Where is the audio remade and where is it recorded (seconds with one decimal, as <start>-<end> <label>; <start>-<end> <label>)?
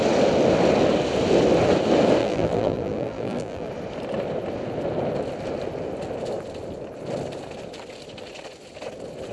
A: 0.0-2.2 recorded; 2.2-3.7 remade; 3.7-9.3 recorded